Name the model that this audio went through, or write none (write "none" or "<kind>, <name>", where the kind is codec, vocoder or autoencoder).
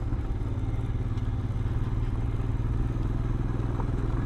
none